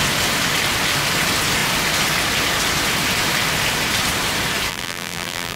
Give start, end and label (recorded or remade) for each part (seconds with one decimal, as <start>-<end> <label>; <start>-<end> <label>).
0.0-4.7 recorded; 4.7-5.6 remade